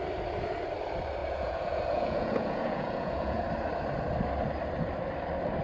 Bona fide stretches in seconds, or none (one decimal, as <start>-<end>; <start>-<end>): 0.0-1.2; 3.4-5.6